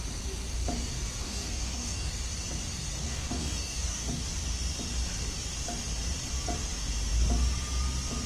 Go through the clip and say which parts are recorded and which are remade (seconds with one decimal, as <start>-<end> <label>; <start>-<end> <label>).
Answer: 0.0-1.2 recorded; 1.2-2.1 remade; 2.1-3.0 recorded; 3.0-4.2 remade; 4.2-8.3 recorded

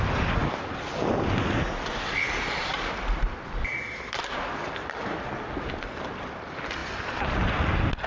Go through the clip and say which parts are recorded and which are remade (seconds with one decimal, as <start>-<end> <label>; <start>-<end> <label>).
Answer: 0.0-8.1 recorded

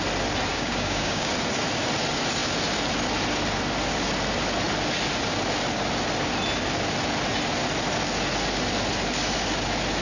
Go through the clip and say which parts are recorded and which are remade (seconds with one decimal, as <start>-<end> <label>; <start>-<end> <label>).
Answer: 0.0-0.5 recorded; 0.5-1.3 remade; 1.3-10.0 recorded

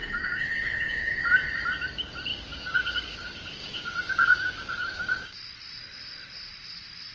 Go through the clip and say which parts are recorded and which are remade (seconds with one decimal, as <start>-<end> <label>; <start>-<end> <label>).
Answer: 0.0-1.3 remade; 1.3-2.3 recorded; 2.3-5.4 remade; 5.4-7.1 recorded

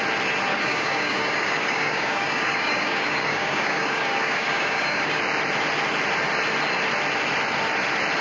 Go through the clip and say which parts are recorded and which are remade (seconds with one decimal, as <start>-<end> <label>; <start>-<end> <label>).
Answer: 0.0-0.5 recorded; 0.5-5.2 remade; 5.2-8.2 recorded

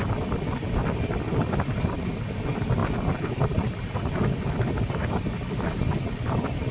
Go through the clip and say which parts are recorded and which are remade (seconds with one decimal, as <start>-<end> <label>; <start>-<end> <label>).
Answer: 0.0-6.7 recorded

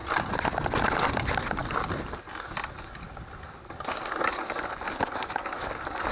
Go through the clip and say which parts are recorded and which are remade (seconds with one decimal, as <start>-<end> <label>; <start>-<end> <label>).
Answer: 0.0-6.1 recorded

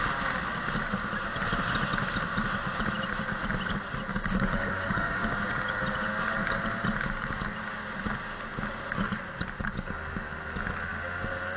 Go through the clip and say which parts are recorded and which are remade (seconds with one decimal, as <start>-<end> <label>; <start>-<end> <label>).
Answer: 0.0-4.1 recorded; 4.1-5.5 remade; 5.5-11.6 recorded